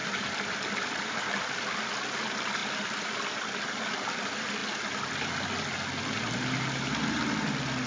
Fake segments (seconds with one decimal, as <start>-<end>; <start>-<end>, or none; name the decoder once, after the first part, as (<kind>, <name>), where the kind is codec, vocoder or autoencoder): 0.0-1.2 (vocoder, BigVGAN v2)